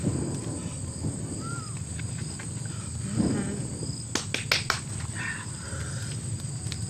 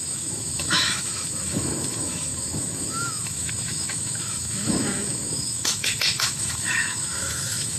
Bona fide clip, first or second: first